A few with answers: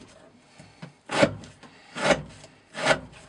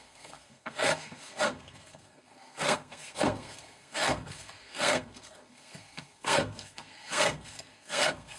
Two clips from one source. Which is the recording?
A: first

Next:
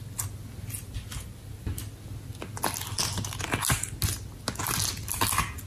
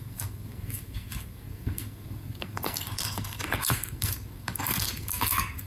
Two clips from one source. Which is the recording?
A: first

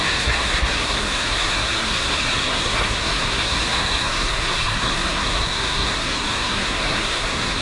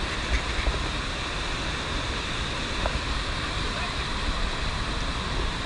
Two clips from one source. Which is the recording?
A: second